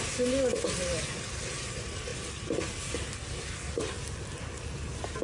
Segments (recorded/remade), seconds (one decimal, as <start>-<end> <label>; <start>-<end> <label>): 0.0-5.2 recorded